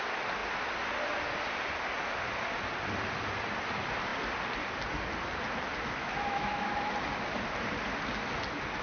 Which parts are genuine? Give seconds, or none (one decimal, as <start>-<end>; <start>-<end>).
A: 0.0-6.0; 6.9-8.8